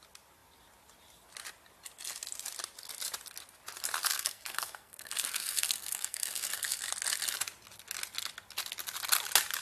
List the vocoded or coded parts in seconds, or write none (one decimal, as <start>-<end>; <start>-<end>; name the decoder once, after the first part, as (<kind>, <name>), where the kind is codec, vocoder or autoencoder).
4.1-6.9 (codec, SNAC)